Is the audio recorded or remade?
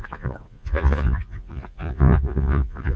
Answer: remade